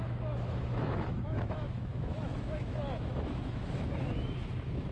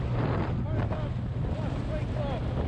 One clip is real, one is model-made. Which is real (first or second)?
second